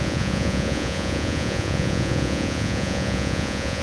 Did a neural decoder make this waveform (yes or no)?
yes